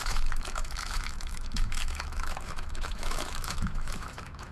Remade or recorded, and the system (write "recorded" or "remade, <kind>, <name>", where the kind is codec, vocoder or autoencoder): remade, autoencoder, DAC-VAE